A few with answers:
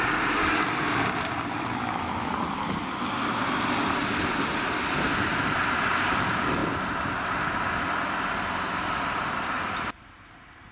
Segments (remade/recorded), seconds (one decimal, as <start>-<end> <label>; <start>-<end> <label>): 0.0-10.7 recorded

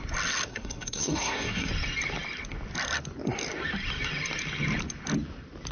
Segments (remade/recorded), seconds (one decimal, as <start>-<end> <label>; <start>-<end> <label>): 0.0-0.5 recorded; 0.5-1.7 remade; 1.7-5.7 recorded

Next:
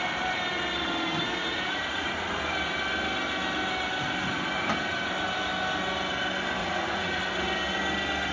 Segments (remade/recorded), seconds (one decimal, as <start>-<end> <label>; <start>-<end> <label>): 0.0-1.4 recorded; 1.4-2.4 remade; 2.4-6.6 recorded; 6.6-7.2 remade; 7.2-8.3 recorded

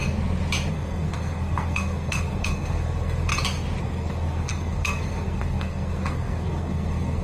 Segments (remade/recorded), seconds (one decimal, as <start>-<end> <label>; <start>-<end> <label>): 0.0-0.7 recorded; 0.7-3.3 remade; 3.3-3.8 recorded; 3.8-7.2 remade